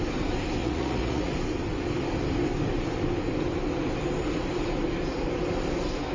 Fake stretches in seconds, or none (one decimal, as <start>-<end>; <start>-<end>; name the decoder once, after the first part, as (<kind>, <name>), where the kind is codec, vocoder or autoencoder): 0.6-1.3 (vocoder, Vocos)